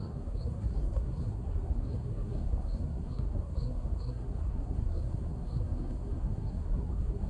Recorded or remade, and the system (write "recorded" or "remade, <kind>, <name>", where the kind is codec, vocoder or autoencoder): remade, codec, SNAC